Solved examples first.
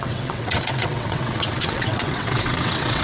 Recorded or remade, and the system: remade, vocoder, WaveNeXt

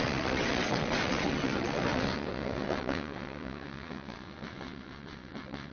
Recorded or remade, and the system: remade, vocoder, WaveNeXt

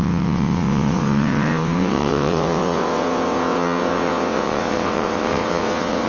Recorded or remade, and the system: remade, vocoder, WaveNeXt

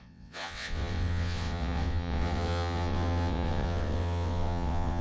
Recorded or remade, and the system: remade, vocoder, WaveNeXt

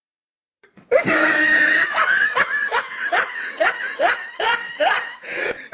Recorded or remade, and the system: remade, vocoder, WaveNeXt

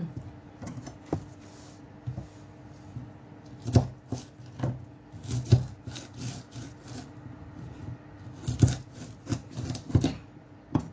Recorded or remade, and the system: recorded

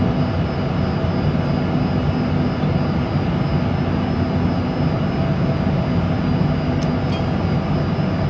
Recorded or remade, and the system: recorded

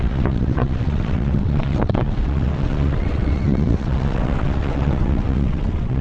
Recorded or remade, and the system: remade, vocoder, WaveNeXt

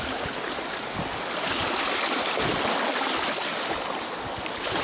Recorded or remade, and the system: recorded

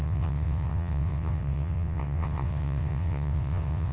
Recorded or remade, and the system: remade, vocoder, WaveNeXt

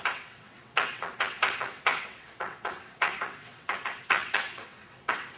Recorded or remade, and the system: remade, vocoder, WaveNeXt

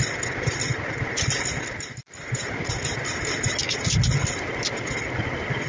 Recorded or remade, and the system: recorded